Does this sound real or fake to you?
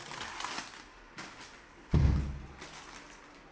real